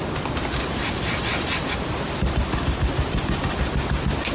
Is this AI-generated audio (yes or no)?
no